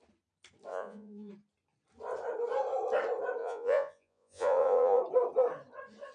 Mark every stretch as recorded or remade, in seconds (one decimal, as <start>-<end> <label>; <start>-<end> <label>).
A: 0.0-0.7 recorded; 0.7-1.3 remade; 1.3-3.4 recorded; 3.4-5.0 remade; 5.0-6.1 recorded